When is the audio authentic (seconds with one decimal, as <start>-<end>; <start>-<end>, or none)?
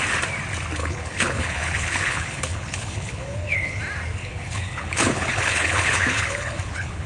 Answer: 0.0-0.8; 3.8-4.2